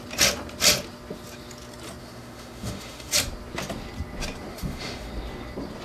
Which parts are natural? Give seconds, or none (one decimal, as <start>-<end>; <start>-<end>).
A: 0.0-2.0; 3.1-4.5; 5.1-5.8